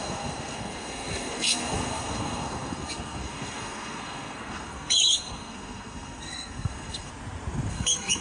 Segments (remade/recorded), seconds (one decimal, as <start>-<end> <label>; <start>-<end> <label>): 0.0-7.1 remade; 7.1-7.7 recorded; 7.7-8.2 remade